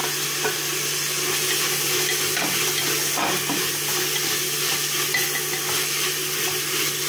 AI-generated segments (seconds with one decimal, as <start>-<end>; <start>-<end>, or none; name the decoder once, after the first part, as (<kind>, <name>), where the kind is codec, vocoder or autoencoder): none